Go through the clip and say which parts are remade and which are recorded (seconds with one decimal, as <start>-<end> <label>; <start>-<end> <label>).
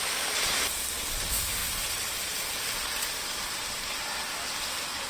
0.0-1.6 recorded; 1.6-5.1 remade